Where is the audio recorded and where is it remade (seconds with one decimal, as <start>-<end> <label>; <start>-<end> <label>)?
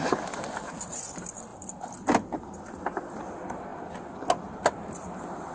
0.0-3.7 remade; 3.7-4.4 recorded; 4.4-5.5 remade